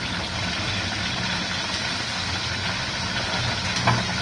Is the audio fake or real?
real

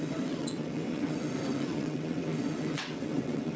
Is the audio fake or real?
fake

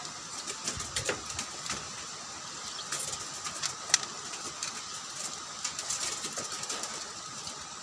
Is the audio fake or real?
real